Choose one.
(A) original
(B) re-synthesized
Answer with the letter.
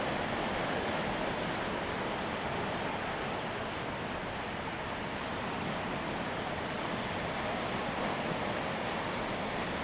B